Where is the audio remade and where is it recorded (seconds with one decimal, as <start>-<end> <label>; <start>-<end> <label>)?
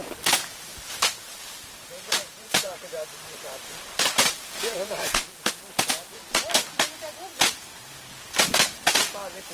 0.0-0.7 recorded; 0.7-5.5 remade; 5.5-9.5 recorded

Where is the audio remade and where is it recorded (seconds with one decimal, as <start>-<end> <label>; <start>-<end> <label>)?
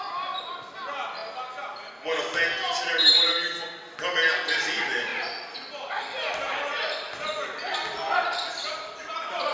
0.0-9.5 recorded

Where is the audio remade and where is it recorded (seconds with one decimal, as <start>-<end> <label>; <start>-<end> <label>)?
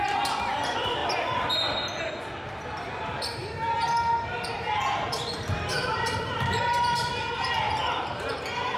0.0-3.4 recorded; 3.4-7.6 remade; 7.6-8.8 recorded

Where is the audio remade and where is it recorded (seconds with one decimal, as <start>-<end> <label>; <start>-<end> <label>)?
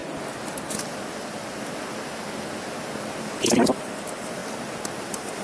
0.0-3.2 recorded; 3.2-4.4 remade; 4.4-5.0 recorded; 5.0-5.4 remade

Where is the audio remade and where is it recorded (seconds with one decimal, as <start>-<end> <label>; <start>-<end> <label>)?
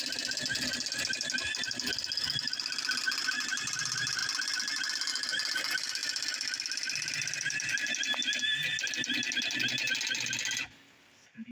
0.0-11.5 recorded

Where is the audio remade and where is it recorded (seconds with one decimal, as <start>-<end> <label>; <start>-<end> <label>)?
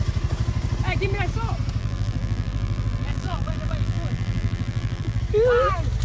0.0-1.8 recorded; 1.8-5.2 remade; 5.2-6.0 recorded